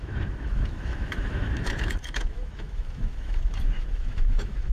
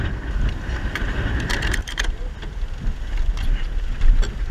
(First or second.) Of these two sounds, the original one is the second